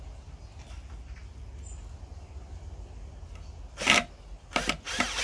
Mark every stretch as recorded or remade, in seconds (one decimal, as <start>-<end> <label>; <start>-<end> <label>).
0.0-5.2 recorded